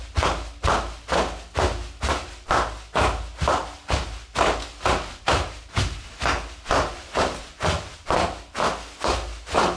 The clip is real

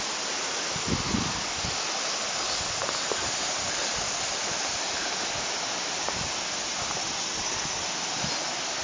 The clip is real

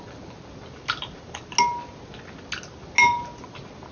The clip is real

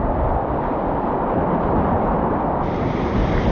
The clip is real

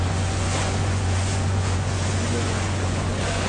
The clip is fake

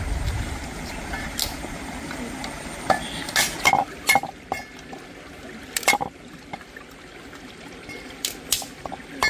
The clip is real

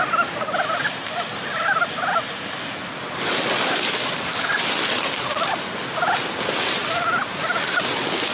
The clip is real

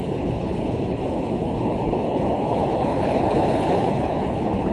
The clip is fake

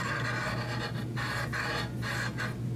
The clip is real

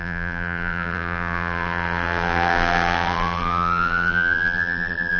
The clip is fake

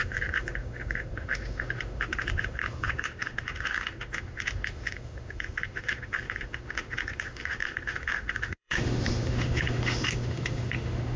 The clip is fake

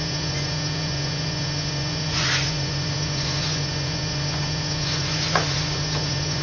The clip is fake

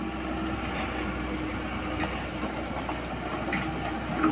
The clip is real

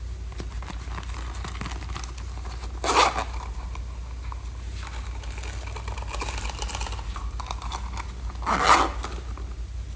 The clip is real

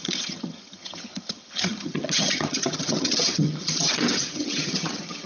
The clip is fake